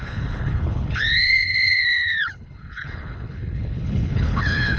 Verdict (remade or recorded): remade